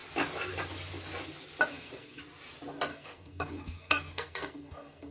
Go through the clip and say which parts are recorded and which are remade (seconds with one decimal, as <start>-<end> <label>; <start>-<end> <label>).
0.0-1.7 recorded; 1.7-2.2 remade; 2.2-2.9 recorded; 2.9-5.1 remade